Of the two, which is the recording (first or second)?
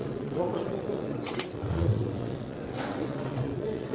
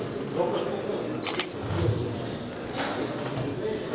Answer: second